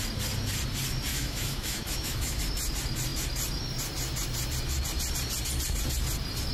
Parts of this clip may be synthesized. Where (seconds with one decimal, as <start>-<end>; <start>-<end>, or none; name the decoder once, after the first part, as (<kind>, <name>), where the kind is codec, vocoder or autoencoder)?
1.1-2.4 (autoencoder, DAC-VAE)